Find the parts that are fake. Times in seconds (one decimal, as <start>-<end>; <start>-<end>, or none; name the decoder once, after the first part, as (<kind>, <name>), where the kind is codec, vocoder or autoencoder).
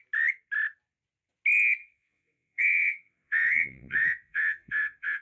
1.8-5.2 (vocoder, WaveNeXt)